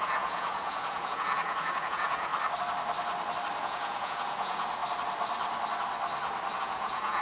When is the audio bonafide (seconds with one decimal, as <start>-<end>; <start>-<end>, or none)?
2.3-3.6; 4.8-6.6